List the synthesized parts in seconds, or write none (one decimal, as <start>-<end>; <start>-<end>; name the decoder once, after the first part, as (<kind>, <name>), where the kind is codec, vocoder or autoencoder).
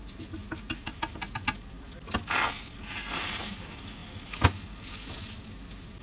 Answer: none